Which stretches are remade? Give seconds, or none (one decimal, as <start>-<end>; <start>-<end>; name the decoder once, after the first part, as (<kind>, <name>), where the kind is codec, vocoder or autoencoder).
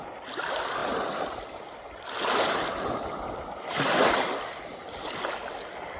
none